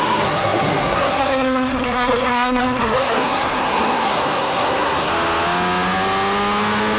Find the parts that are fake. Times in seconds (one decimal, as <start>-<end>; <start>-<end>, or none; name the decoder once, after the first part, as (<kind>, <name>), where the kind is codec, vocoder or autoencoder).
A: 0.0-5.1 (codec, SNAC)